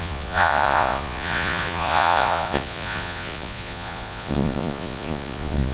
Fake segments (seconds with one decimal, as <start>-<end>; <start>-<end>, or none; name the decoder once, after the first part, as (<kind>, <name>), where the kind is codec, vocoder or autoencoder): 0.0-5.7 (vocoder, Vocos)